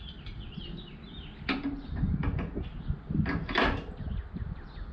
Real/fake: real